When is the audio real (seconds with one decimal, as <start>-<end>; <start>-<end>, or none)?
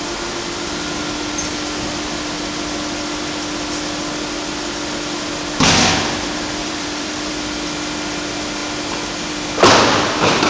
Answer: 0.0-6.6; 7.3-10.5